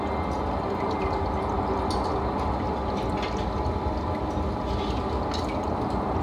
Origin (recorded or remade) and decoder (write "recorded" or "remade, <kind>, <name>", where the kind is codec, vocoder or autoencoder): recorded